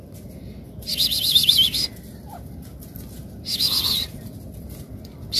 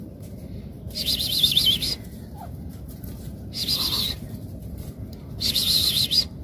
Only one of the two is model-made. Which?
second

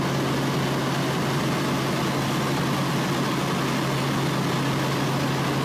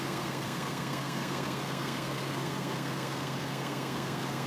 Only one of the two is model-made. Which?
second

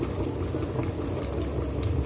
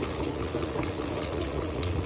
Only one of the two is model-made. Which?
second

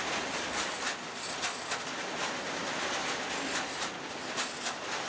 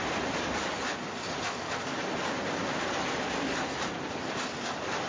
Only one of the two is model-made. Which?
second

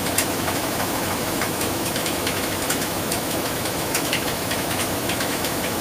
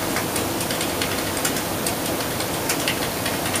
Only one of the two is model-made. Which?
first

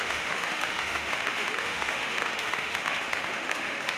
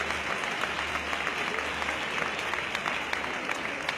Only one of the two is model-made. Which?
first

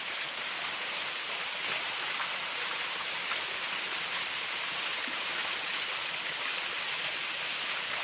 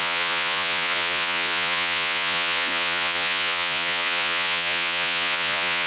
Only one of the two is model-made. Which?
second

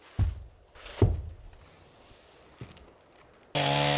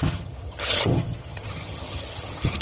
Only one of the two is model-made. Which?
second